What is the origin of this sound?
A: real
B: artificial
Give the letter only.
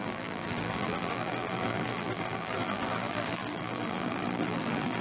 B